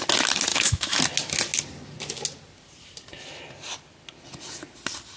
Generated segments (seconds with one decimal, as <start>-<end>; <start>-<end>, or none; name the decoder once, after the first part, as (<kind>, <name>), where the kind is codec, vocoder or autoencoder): 0.5-1.0 (autoencoder, DAC-VAE)